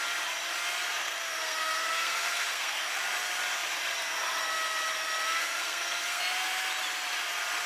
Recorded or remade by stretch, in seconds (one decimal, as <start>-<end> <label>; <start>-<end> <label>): 0.0-1.0 recorded; 1.0-3.0 remade; 3.0-5.4 recorded; 5.4-6.2 remade; 6.2-7.7 recorded